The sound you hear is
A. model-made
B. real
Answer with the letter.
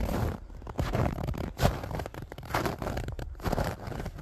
A